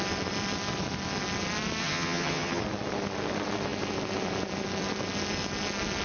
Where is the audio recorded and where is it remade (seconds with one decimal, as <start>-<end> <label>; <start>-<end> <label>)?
0.0-1.8 recorded; 1.8-2.6 remade; 2.6-6.0 recorded